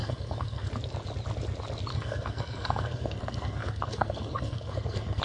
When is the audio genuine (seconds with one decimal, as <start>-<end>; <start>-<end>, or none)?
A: 0.7-1.9